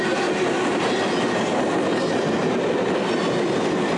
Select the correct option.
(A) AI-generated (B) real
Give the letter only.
B